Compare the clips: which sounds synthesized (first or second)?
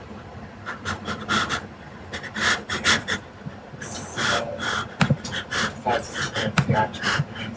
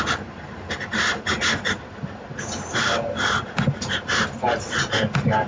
first